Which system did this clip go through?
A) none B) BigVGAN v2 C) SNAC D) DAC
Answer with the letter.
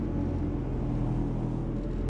A